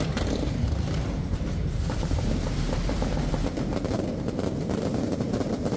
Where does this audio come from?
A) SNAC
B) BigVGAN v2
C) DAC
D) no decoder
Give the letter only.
B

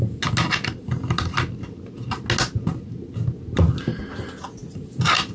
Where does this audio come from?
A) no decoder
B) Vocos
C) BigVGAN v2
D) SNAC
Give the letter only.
A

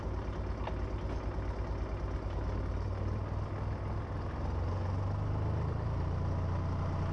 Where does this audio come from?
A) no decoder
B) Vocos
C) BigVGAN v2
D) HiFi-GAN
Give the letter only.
A